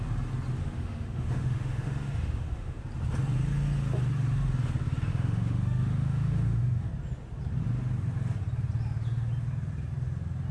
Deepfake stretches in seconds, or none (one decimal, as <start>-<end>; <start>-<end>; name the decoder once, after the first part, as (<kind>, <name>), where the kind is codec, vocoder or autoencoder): 0.6-2.8 (autoencoder, DAC-VAE); 5.1-6.9